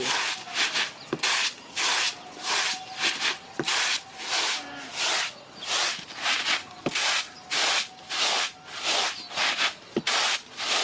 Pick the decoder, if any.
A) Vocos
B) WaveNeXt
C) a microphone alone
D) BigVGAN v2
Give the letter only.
C